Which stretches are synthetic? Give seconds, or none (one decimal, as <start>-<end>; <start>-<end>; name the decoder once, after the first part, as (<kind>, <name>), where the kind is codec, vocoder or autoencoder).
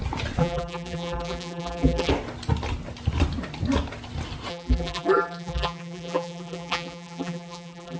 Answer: 0.4-2.1 (vocoder, BigVGAN v2); 4.5-8.0